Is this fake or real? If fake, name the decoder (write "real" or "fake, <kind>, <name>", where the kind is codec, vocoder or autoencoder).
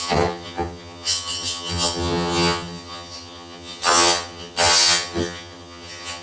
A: fake, vocoder, HiFi-GAN